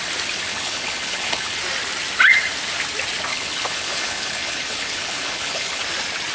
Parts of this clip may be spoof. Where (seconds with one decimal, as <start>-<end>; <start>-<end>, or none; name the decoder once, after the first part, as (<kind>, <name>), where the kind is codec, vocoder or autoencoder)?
0.5-1.6 (codec, HILCodec); 3.3-5.8